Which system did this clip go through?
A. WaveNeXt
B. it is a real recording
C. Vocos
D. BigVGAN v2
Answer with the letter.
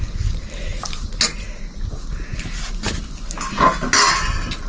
B